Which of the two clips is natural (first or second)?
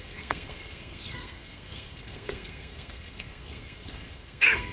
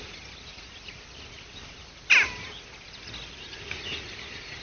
second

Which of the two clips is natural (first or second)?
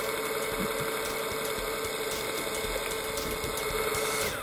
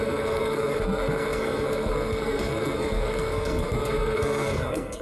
first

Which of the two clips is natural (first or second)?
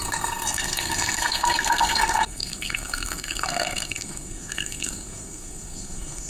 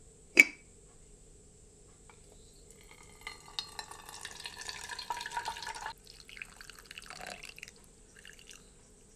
second